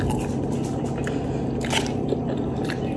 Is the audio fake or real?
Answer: real